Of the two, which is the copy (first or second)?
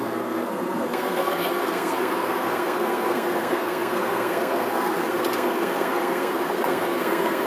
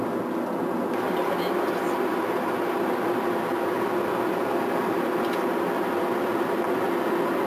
first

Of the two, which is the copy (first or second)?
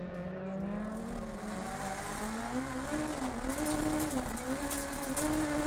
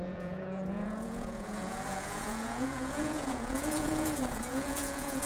second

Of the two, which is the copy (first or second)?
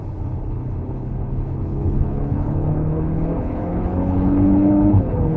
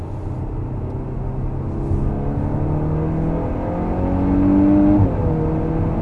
first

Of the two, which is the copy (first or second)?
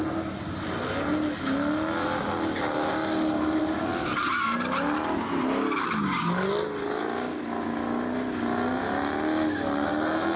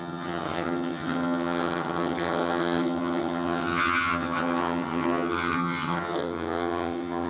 second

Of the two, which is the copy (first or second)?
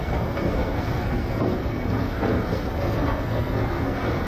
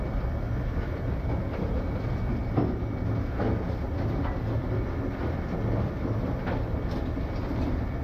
first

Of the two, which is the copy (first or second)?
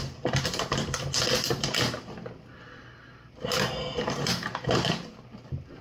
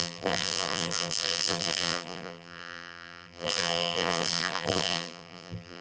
second